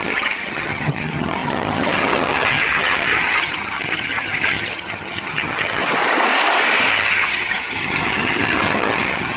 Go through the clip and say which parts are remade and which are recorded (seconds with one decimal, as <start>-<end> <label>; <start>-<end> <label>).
0.0-5.8 remade; 5.8-6.9 recorded; 6.9-9.4 remade